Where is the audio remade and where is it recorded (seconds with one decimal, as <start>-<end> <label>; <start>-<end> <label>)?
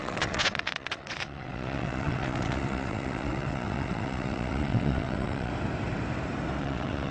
0.0-5.5 remade; 5.5-6.6 recorded; 6.6-7.1 remade